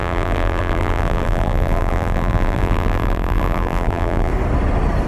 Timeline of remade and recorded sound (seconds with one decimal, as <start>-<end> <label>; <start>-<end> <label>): 0.0-4.3 remade; 4.3-5.1 recorded